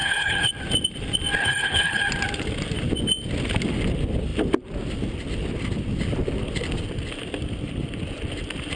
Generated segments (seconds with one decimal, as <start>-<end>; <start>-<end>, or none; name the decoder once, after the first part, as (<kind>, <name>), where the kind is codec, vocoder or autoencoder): 0.0-0.5 (codec, HILCodec); 1.4-2.0